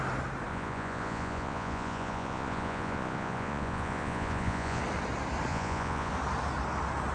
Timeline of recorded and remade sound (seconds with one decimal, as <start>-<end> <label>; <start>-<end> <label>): 0.0-0.5 recorded; 0.5-4.8 remade; 4.8-5.5 recorded; 5.5-6.1 remade; 6.1-7.1 recorded